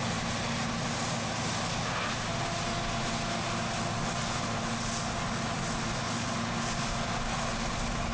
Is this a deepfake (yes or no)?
no